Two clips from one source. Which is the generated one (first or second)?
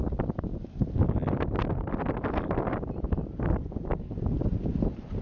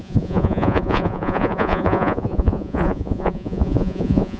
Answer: second